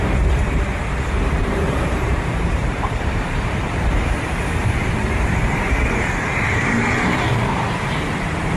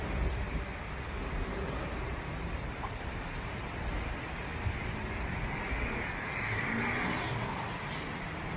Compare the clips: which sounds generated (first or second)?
first